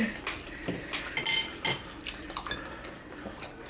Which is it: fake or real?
real